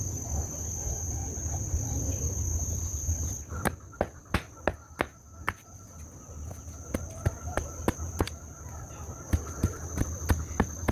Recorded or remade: recorded